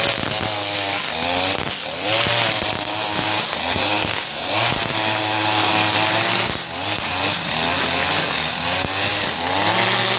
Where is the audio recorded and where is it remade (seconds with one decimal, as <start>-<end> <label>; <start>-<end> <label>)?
0.0-3.6 recorded; 3.6-4.7 remade; 4.7-5.2 recorded; 5.2-5.7 remade; 5.7-10.2 recorded